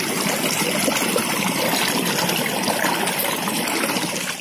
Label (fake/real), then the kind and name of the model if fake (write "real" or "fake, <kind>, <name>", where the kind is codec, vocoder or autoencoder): real